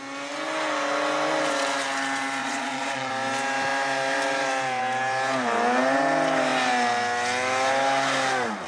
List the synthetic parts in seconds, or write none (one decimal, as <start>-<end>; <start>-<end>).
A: 2.4-3.1